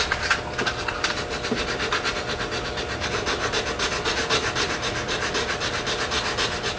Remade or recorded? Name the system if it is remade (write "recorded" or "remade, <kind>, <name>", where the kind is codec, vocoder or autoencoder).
recorded